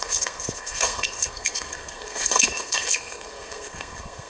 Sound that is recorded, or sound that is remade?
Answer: remade